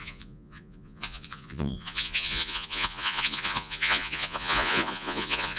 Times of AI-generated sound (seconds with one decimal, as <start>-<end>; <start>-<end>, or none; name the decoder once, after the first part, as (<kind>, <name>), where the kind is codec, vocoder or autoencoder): 0.0-5.6 (vocoder, Vocos)